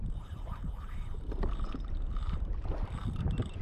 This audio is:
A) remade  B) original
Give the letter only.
A